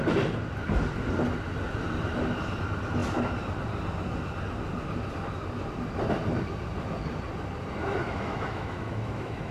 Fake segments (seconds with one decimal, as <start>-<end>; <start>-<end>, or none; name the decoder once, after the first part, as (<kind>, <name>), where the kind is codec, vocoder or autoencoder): 8.0-9.5 (autoencoder, DAC-VAE)